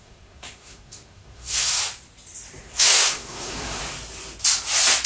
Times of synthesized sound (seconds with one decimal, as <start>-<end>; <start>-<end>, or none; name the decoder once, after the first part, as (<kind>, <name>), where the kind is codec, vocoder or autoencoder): 0.0-1.8 (codec, SNAC); 2.6-3.8